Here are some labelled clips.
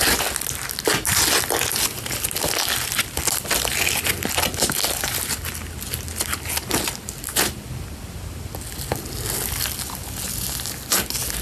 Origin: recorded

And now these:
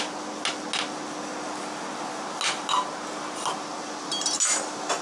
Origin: recorded